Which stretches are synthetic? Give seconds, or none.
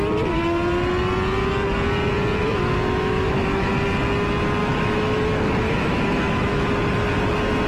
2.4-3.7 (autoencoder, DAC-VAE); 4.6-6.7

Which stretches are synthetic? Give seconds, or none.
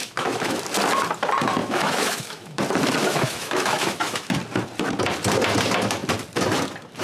0.0-0.6 (autoencoder, DAC-VAE); 1.6-2.6; 3.0-4.3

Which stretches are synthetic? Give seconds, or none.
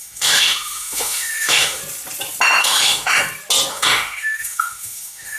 0.0-1.8 (autoencoder, DAC-VAE); 2.6-3.2; 3.7-5.4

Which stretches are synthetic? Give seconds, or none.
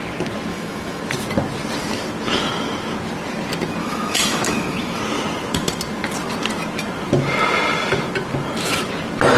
0.5-1.0 (autoencoder, DAC-VAE); 3.8-5.0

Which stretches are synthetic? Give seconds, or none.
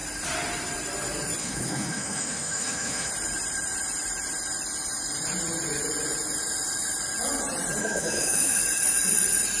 1.4-3.1 (autoencoder, DAC-VAE); 7.8-8.6